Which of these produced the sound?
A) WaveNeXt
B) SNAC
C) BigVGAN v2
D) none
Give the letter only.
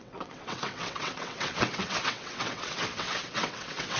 A